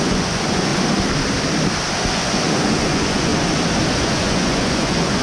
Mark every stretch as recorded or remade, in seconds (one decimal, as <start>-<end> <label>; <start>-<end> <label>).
0.0-0.7 remade; 0.7-2.1 recorded; 2.1-3.3 remade; 3.3-3.9 recorded; 3.9-5.2 remade